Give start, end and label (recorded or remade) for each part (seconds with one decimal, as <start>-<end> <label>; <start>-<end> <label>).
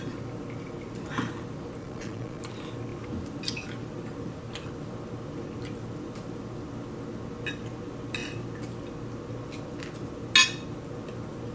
0.0-1.8 recorded; 1.8-2.4 remade; 2.4-11.5 recorded